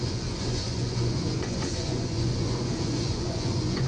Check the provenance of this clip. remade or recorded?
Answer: remade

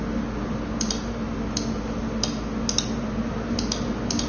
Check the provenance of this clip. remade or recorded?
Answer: recorded